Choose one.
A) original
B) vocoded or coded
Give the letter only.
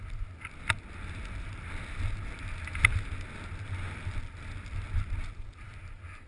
A